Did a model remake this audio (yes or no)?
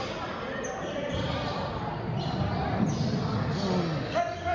no